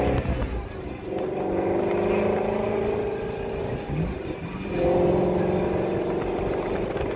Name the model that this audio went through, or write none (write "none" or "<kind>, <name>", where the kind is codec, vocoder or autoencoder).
none